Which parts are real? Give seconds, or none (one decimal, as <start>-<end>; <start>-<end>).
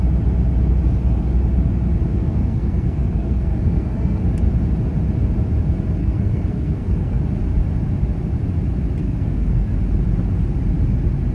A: 0.0-2.1; 4.2-6.0; 7.2-9.0; 9.8-11.3